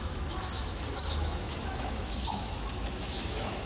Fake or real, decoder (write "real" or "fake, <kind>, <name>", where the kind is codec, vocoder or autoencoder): fake, autoencoder, DAC-VAE